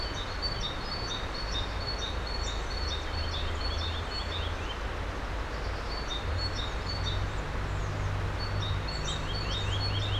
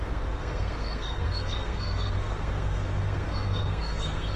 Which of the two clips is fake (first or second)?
second